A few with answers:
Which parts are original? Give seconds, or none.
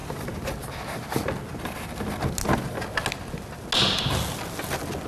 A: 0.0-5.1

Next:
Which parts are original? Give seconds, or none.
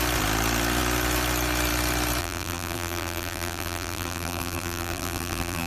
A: 0.0-2.2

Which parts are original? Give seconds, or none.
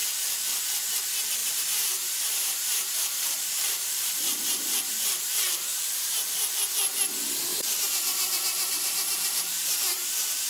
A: 0.0-1.4; 5.3-5.7; 6.5-7.5; 10.1-10.5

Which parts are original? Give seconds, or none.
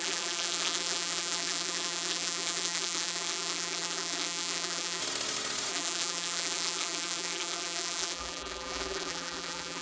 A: 5.0-5.7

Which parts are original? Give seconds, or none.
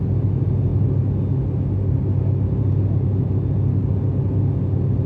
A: 0.0-5.1